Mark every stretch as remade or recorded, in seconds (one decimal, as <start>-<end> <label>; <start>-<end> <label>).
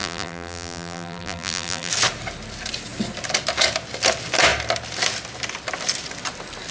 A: 0.0-1.9 remade; 1.9-6.7 recorded